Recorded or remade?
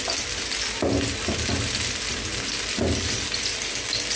recorded